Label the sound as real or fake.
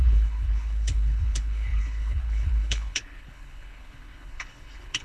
fake